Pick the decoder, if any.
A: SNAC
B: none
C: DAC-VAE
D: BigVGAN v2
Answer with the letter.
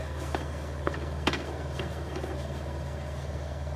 A